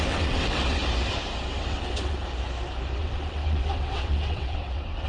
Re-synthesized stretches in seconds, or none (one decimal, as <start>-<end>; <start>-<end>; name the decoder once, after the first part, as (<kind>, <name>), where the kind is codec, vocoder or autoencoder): 0.0-0.8 (vocoder, WaveNeXt); 1.4-2.2; 3.0-5.1